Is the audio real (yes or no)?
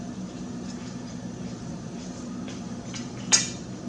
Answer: no